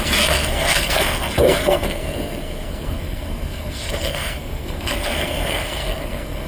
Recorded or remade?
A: remade